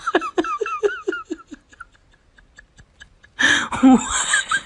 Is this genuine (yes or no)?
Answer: yes